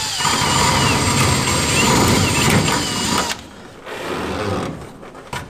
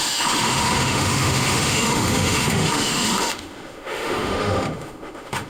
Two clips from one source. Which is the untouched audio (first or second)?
first